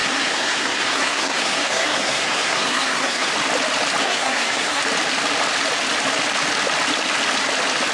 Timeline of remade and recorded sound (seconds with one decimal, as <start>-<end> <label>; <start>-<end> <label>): 0.0-3.3 remade; 3.3-4.0 recorded; 4.0-4.8 remade; 4.8-7.9 recorded